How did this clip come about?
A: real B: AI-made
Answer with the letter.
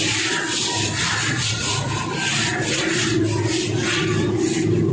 A